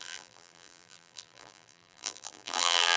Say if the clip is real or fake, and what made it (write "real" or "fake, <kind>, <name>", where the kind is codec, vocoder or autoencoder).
fake, vocoder, BigVGAN v2